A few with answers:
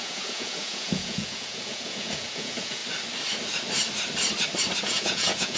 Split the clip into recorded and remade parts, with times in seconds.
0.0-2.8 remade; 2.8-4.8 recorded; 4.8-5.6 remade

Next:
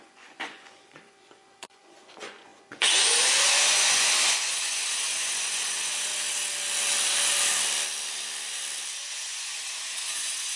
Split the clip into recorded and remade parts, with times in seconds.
0.0-6.1 remade; 6.1-9.1 recorded; 9.1-10.6 remade

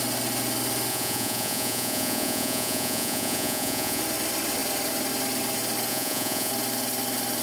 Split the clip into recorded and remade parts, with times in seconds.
0.0-0.9 recorded; 0.9-4.0 remade; 4.0-5.9 recorded; 5.9-6.5 remade; 6.5-7.4 recorded

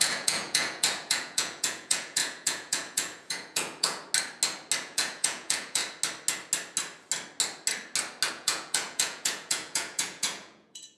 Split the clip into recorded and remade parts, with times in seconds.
0.0-4.0 remade; 4.0-4.8 recorded; 4.8-5.8 remade; 5.8-8.3 recorded; 8.3-11.0 remade